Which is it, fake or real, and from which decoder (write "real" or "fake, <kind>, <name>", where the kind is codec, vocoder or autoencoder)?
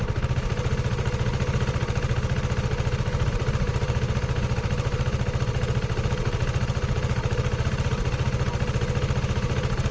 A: real